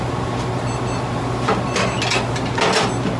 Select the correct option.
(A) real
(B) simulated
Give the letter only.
A